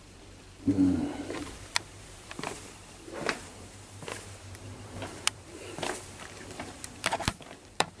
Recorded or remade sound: remade